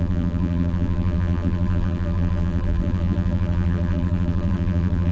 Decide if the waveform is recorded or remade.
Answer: remade